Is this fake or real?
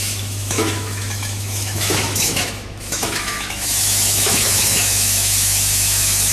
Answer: fake